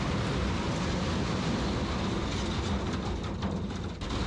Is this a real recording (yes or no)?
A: yes